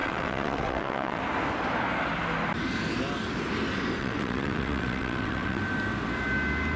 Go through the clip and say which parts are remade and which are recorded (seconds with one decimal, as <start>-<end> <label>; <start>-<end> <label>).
0.0-1.2 remade; 1.2-4.0 recorded; 4.0-5.6 remade; 5.6-6.8 recorded